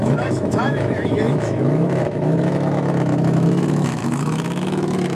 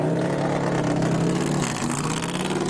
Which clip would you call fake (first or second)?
first